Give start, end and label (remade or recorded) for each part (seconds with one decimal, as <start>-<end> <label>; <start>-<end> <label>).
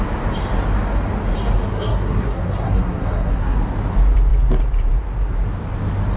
0.0-1.7 recorded; 1.7-3.6 remade; 3.6-6.2 recorded